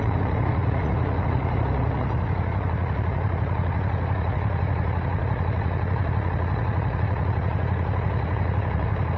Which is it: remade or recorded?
remade